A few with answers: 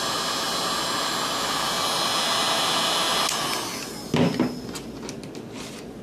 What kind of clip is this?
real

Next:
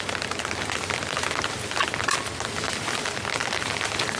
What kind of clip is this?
real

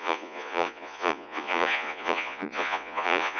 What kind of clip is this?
fake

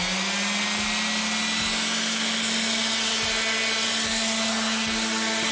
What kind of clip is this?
real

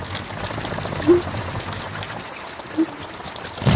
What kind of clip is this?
real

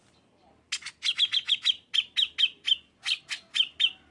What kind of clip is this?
real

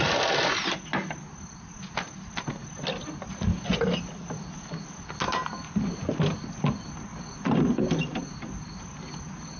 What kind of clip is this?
real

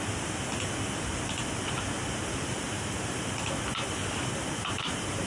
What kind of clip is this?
real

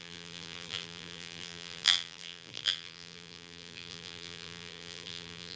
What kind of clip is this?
fake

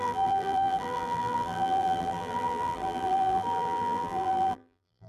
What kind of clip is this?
fake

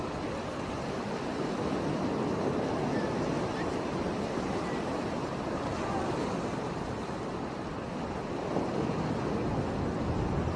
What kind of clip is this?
real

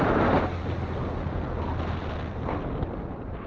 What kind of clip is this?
real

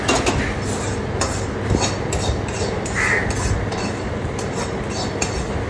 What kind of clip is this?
real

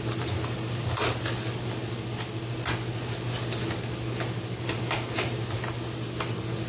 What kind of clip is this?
real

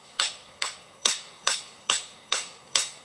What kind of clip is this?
fake